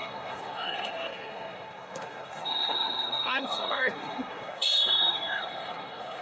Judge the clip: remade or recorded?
remade